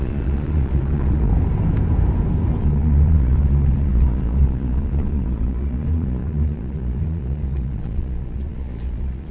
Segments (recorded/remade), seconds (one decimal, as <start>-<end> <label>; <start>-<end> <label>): 0.0-1.3 remade; 1.3-2.6 recorded; 2.6-9.3 remade